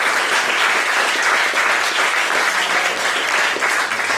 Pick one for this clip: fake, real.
real